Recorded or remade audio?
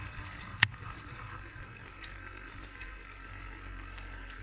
remade